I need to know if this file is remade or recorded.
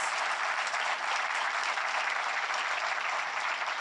recorded